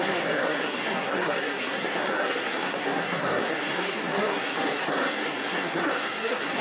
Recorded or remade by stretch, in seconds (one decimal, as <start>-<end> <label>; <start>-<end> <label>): 0.0-6.6 remade